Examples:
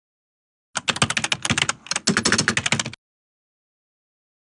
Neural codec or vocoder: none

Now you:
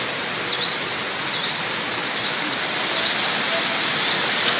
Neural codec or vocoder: none